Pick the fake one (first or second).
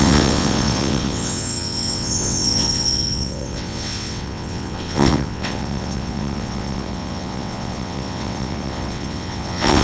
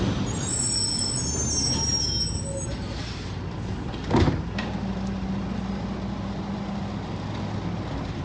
first